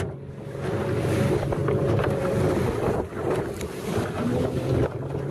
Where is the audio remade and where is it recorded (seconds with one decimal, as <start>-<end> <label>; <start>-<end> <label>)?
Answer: 0.0-5.3 recorded